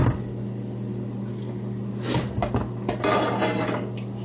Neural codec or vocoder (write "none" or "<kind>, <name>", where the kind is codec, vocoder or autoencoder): none